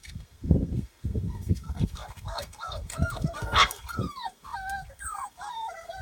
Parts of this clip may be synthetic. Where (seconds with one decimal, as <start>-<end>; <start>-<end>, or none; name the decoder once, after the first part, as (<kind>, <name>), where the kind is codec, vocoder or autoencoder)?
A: 0.0-6.0 (codec, SNAC)